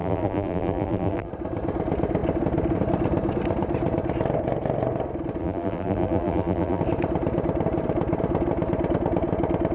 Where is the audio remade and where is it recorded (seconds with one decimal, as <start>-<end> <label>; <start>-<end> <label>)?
0.0-1.3 remade; 1.3-5.4 recorded; 5.4-6.8 remade; 6.8-9.7 recorded